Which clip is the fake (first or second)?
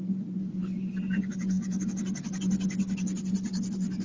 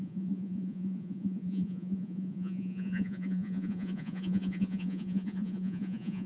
second